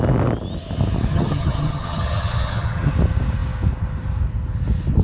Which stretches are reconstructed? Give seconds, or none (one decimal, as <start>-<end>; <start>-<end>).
1.1-2.9